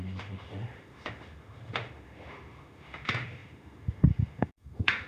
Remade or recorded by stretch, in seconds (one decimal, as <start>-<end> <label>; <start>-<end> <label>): 0.0-5.1 remade